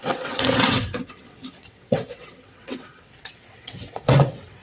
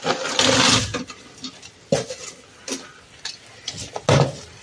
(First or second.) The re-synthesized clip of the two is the first